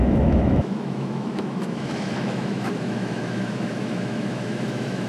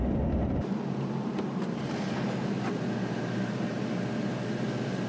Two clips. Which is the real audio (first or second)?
second